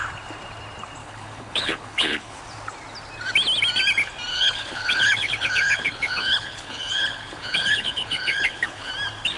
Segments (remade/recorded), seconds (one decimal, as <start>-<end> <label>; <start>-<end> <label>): 0.0-1.0 recorded; 1.0-2.4 remade; 2.4-4.3 recorded; 4.3-8.9 remade; 8.9-9.4 recorded